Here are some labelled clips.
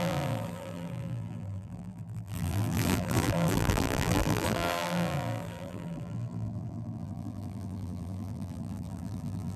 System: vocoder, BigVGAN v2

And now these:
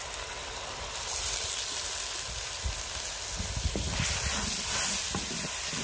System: none